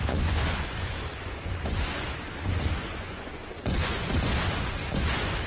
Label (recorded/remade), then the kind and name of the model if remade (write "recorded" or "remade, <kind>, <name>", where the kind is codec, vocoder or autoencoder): remade, vocoder, Vocos